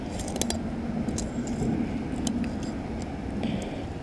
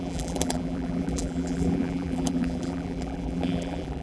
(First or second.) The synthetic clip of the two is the second